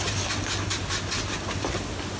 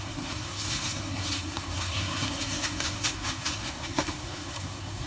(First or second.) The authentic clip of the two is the first